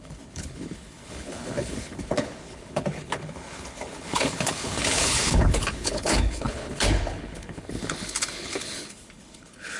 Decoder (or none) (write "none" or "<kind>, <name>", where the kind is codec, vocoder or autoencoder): codec, HILCodec